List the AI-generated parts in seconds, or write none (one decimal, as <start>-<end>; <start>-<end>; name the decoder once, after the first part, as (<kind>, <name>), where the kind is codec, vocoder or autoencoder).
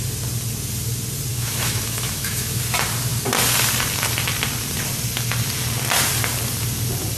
1.3-2.6 (autoencoder, DAC-VAE)